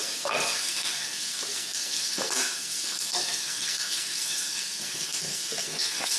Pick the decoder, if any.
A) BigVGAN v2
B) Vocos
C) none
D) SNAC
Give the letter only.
D